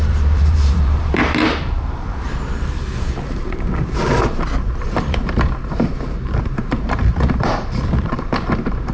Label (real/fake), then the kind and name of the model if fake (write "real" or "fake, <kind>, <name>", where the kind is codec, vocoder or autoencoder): fake, vocoder, BigVGAN v2